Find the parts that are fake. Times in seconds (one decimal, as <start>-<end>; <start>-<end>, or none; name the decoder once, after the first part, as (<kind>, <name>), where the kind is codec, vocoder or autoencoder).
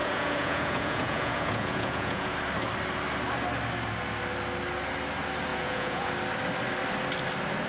0.0-2.3 (vocoder, Vocos); 5.5-6.1